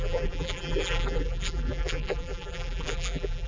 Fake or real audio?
fake